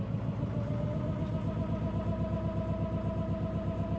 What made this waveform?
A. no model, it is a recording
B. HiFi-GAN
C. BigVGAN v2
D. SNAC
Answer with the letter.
A